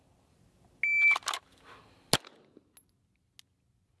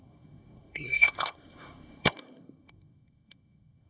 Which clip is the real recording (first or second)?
first